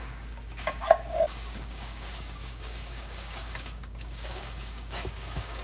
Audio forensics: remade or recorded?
remade